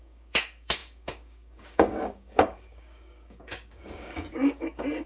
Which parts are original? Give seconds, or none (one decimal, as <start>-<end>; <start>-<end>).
none